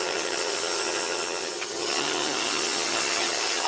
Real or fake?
fake